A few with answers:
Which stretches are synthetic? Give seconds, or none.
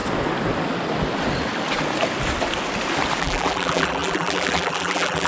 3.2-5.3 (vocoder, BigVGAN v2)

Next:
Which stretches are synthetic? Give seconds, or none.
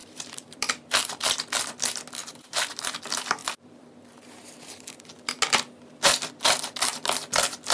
0.0-0.7 (vocoder, BigVGAN v2); 2.2-3.0; 3.4-5.0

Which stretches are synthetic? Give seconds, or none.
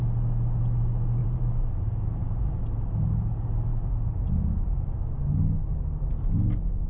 1.2-2.5 (vocoder, BigVGAN v2)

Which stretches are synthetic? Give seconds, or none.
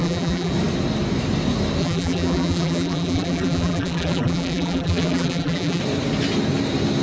0.0-0.5 (vocoder, BigVGAN v2); 1.8-5.8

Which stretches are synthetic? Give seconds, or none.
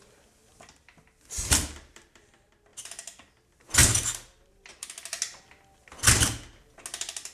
0.4-2.3 (vocoder, BigVGAN v2); 2.7-3.3; 3.8-4.9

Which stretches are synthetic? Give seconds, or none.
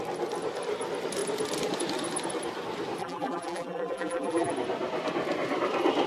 3.0-4.5 (vocoder, BigVGAN v2)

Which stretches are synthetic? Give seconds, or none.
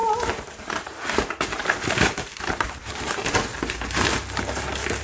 0.0-3.0 (vocoder, BigVGAN v2); 3.5-4.1